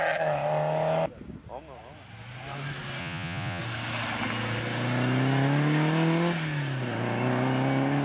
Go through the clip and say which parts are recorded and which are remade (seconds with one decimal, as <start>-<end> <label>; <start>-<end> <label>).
0.0-3.0 recorded; 3.0-3.6 remade; 3.6-8.0 recorded